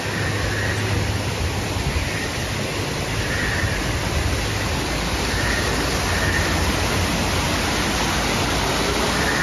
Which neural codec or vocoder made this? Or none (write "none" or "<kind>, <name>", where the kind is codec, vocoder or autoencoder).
none